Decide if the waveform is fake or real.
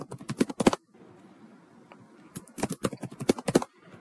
real